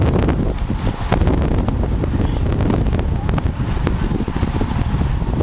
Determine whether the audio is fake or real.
real